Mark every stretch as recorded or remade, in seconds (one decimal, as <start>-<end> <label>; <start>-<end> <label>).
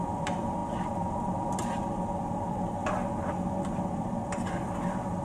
0.0-5.2 remade